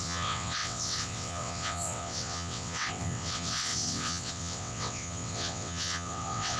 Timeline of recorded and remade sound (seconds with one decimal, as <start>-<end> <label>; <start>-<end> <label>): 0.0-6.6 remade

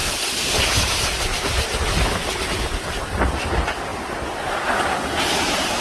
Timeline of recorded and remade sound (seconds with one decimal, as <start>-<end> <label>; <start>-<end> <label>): 0.0-5.8 recorded

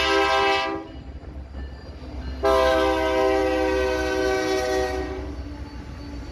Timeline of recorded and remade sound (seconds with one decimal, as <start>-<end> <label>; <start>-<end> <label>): 0.0-6.3 recorded

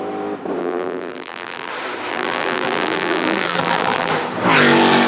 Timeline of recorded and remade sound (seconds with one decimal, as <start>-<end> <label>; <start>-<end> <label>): 0.0-0.6 recorded; 0.6-1.7 remade; 1.7-2.1 recorded; 2.1-4.1 remade; 4.1-5.1 recorded

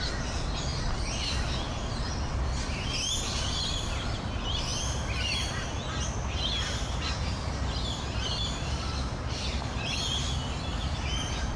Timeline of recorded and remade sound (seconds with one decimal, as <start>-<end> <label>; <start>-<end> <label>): 0.0-11.6 recorded

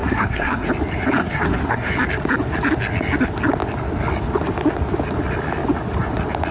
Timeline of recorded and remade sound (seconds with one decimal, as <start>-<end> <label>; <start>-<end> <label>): 0.0-0.7 remade; 0.7-1.2 recorded; 1.2-1.9 remade; 1.9-6.5 recorded

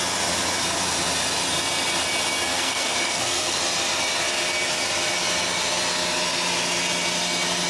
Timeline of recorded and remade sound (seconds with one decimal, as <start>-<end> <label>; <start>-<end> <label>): 0.0-2.5 recorded; 2.5-3.6 remade; 3.6-7.7 recorded